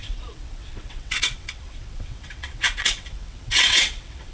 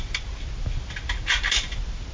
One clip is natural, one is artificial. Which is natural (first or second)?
second